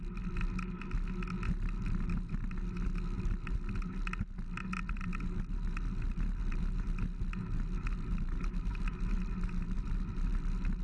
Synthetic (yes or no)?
no